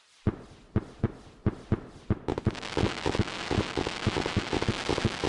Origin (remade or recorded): recorded